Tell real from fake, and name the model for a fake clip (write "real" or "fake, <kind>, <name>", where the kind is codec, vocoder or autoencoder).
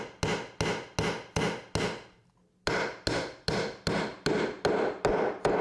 real